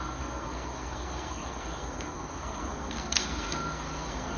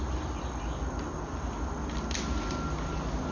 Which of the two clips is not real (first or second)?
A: first